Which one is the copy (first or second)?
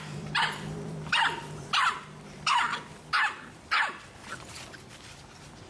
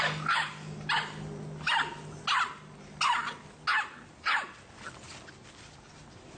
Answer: first